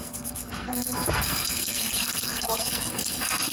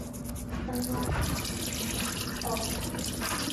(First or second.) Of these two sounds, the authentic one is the second